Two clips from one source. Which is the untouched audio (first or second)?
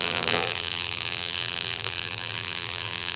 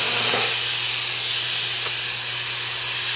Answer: second